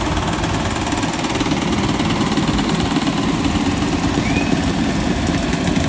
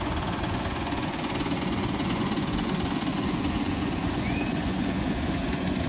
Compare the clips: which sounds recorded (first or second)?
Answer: first